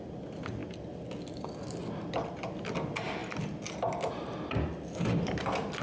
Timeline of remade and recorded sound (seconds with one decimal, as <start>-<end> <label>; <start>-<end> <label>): 0.0-5.8 recorded